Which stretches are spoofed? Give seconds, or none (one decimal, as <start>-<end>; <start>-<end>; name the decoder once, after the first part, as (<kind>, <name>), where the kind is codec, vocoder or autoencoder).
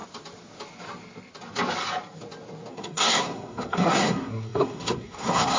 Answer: 2.7-5.6 (codec, SNAC)